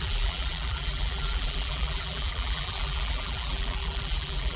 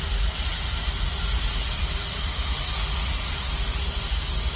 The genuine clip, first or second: second